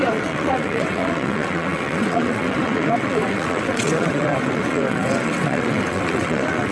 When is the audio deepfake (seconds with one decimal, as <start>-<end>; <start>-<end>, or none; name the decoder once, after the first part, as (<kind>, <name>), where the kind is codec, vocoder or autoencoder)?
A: 0.0-6.7 (vocoder, WaveNeXt)